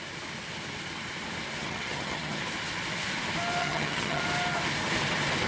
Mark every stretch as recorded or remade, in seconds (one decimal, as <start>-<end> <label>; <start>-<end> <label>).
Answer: 0.0-1.6 recorded; 1.6-2.4 remade; 2.4-3.6 recorded; 3.6-4.2 remade; 4.2-5.5 recorded